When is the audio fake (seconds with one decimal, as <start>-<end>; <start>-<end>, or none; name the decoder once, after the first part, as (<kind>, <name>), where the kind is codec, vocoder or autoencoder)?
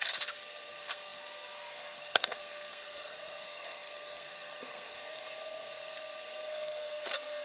0.0-7.4 (codec, SNAC)